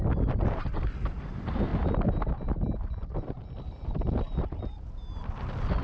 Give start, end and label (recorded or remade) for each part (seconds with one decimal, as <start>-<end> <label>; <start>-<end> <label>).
0.0-5.8 recorded